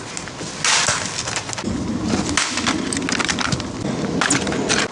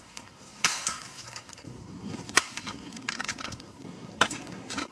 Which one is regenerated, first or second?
second